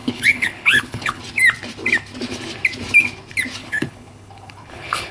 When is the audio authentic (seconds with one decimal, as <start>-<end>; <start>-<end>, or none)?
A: 1.2-3.6